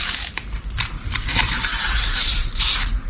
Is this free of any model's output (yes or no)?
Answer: no